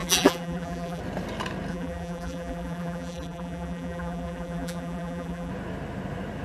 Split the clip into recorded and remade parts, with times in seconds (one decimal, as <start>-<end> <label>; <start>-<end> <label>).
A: 0.0-1.0 remade; 1.0-1.7 recorded; 1.7-5.5 remade; 5.5-6.4 recorded